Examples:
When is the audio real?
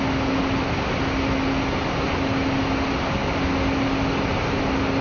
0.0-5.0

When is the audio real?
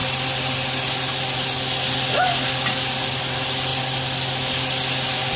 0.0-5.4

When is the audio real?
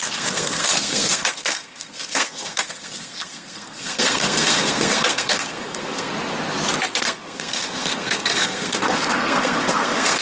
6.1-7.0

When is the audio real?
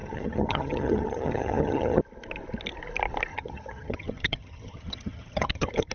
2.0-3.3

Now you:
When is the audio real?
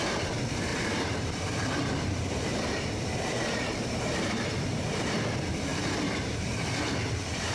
0.0-0.7; 5.2-5.7; 6.7-7.5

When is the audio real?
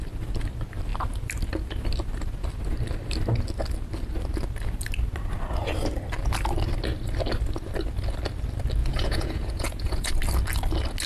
0.0-8.8; 10.1-11.1